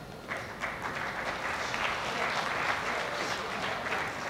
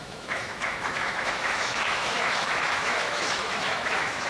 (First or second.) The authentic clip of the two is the first